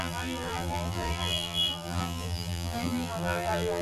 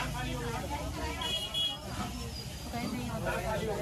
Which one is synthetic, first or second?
first